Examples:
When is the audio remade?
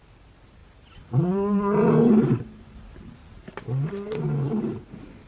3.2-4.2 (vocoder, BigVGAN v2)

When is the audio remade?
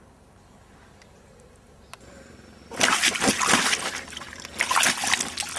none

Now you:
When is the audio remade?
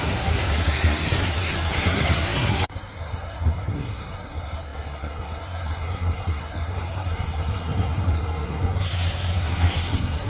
0.0-10.3 (codec, SNAC)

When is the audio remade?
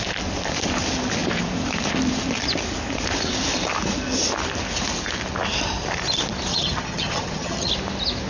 6.5-7.7 (vocoder, HiFi-GAN)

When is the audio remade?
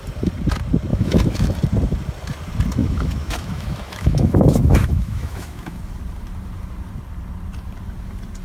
0.9-1.5 (autoencoder, DAC-VAE); 2.8-5.8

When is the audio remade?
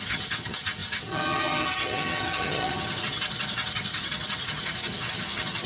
0.0-5.7 (vocoder, HiFi-GAN)